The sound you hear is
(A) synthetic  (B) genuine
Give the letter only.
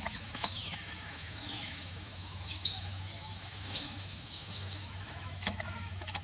A